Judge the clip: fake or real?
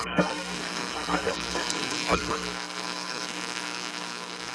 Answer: fake